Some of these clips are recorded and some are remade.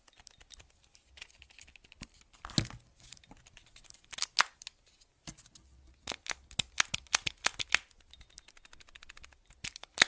recorded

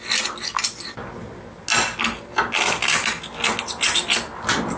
recorded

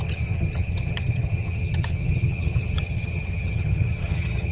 remade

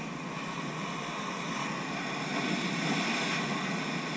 recorded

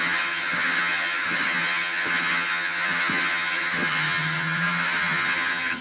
remade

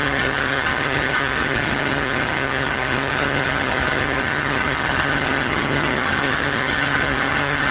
remade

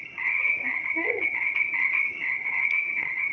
remade